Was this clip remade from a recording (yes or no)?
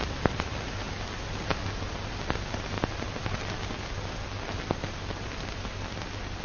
no